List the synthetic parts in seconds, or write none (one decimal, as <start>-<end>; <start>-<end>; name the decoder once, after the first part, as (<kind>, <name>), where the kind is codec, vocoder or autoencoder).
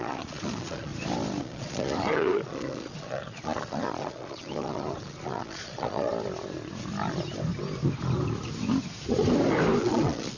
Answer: 0.0-0.9 (vocoder, Vocos); 1.4-6.1; 9.8-10.4